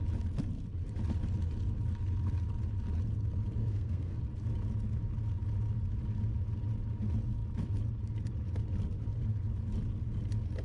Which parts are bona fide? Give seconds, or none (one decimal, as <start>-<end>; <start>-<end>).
0.0-3.6; 4.2-10.6